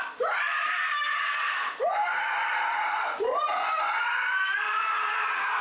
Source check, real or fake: fake